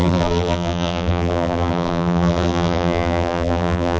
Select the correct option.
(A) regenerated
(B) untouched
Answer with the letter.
A